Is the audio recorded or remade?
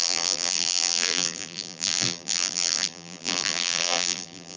remade